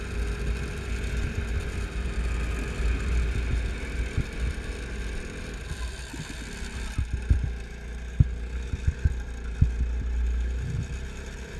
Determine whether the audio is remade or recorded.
recorded